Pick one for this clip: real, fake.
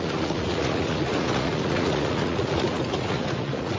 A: fake